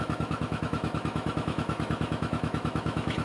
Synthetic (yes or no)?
yes